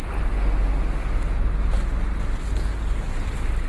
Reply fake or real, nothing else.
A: real